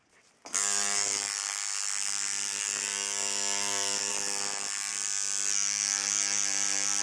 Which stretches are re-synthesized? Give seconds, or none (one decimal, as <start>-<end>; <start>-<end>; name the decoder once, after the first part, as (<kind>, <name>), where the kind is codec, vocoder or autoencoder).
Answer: none